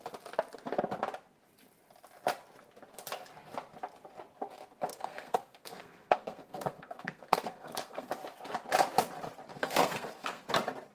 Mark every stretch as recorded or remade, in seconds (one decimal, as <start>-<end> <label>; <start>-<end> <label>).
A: 0.0-4.9 recorded; 4.9-8.1 remade; 8.1-9.5 recorded; 9.5-10.5 remade; 10.5-10.9 recorded